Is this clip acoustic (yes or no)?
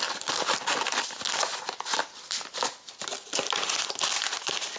yes